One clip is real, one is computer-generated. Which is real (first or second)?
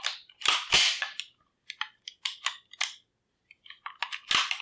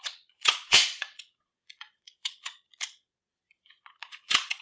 first